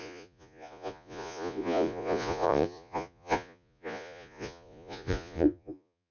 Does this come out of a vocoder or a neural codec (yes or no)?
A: yes